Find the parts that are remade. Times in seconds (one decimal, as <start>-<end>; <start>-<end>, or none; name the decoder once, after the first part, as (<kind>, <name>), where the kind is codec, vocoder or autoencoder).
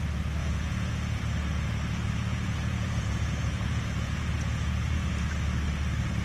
0.4-1.2 (vocoder, Vocos); 2.2-5.1